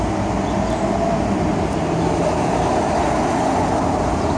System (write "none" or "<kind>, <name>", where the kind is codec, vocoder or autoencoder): none